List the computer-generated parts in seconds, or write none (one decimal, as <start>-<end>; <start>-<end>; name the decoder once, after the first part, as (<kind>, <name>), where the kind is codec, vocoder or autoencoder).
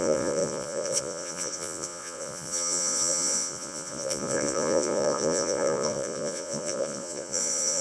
0.0-7.8 (vocoder, Vocos)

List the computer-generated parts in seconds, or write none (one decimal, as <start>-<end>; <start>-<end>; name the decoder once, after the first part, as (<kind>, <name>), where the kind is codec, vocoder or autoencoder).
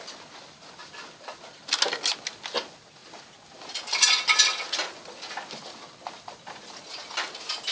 none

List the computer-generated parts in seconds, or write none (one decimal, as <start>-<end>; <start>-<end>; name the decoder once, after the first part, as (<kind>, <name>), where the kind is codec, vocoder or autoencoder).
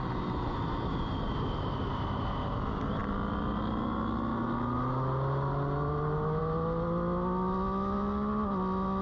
none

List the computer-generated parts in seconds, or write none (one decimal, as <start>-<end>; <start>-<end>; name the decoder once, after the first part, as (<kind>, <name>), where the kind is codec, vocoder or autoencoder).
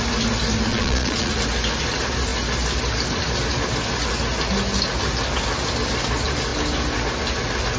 0.7-1.3 (vocoder, Vocos)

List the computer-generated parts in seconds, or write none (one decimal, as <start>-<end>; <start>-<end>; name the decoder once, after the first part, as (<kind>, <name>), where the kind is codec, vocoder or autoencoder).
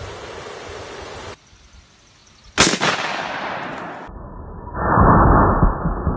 none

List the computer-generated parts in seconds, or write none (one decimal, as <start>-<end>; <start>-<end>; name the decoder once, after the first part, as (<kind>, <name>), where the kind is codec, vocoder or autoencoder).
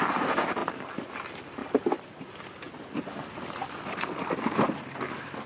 none